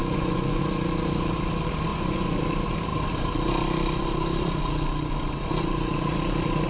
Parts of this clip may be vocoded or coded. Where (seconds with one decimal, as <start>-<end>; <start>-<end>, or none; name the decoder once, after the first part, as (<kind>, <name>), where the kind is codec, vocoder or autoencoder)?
0.0-0.6 (vocoder, Vocos); 1.9-2.4